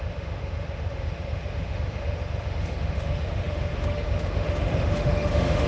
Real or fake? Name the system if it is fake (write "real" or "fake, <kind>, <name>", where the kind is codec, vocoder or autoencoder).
fake, autoencoder, DAC-VAE